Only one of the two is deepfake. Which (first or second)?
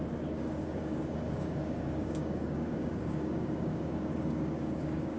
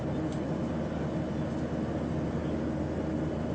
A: first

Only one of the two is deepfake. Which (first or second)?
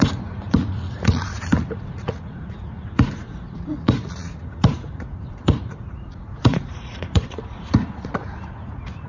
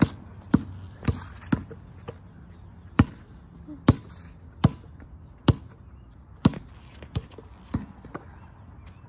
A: first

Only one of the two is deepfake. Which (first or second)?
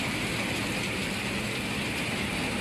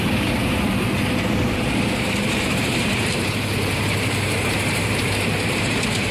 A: second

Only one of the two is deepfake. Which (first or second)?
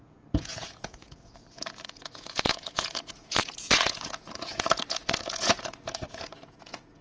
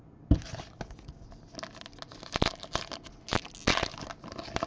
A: first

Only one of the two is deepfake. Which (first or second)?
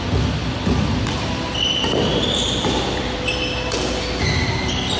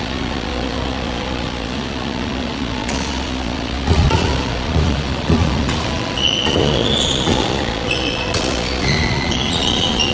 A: second